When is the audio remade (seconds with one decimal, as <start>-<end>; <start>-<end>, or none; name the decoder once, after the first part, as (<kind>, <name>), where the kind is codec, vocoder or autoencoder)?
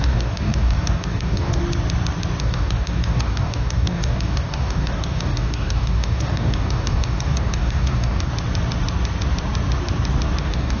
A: 0.0-1.6 (codec, DAC); 2.4-8.3; 10.4-10.8